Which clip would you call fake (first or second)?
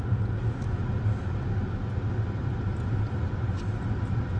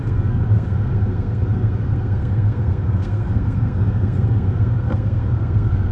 second